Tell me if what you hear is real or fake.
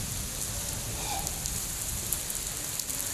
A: real